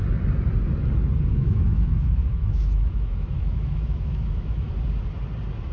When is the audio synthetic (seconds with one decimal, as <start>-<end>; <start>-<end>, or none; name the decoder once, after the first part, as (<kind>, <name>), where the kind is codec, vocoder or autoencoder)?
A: 1.3-4.7 (autoencoder, DAC-VAE)